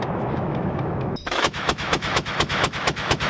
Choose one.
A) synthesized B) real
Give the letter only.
A